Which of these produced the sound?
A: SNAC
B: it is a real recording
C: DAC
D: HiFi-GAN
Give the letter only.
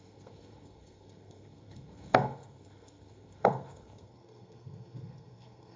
A